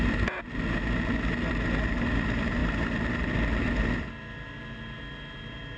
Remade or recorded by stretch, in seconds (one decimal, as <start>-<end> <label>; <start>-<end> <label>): 0.0-5.8 recorded